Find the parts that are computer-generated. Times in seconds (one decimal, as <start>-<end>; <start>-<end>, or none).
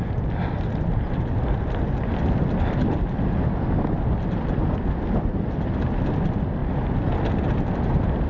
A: none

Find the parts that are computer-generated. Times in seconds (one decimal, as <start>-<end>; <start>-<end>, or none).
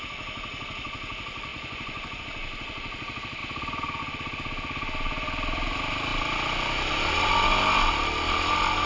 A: 1.5-2.2